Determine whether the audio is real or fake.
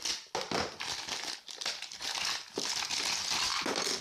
real